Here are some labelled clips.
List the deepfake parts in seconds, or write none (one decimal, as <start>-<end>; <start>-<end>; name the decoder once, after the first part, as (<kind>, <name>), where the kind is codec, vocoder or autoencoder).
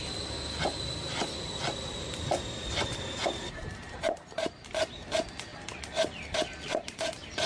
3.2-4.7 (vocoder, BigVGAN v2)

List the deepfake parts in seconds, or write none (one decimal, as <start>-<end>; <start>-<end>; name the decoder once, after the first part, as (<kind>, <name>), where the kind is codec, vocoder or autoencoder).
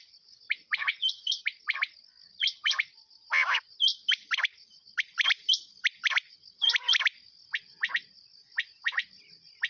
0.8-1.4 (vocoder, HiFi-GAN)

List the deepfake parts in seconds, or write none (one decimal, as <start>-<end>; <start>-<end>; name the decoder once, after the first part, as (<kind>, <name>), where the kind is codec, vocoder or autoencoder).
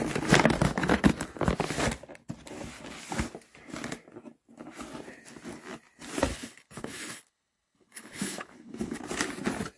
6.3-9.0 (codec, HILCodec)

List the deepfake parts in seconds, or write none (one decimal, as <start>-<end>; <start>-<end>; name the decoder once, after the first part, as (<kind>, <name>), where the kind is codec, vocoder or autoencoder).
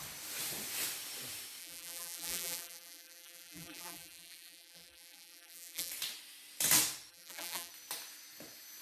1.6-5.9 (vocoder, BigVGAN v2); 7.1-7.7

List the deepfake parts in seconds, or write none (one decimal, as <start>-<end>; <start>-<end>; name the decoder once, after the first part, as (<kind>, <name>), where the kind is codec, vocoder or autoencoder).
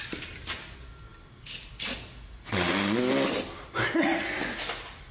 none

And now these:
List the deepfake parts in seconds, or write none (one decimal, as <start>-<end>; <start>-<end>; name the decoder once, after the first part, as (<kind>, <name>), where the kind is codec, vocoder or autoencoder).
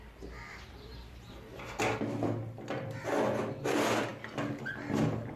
0.5-1.8 (vocoder, BigVGAN v2)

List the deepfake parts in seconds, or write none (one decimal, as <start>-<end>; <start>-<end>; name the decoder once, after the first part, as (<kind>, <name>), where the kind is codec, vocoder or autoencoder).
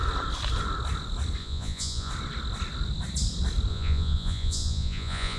1.4-2.1 (vocoder, Vocos); 3.7-5.4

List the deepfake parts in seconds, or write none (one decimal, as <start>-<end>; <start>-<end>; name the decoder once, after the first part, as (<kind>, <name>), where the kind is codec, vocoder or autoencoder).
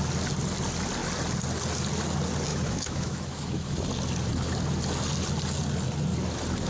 2.5-3.9 (autoencoder, DAC-VAE)